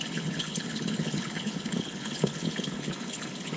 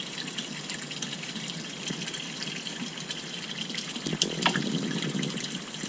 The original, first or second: second